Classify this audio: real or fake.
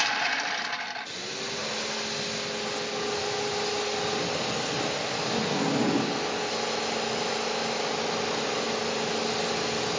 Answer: real